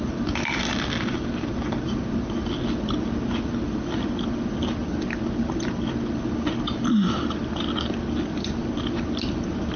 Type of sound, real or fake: real